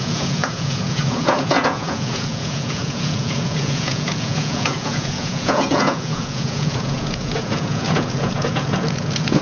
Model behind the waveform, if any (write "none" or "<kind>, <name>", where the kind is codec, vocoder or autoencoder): vocoder, Vocos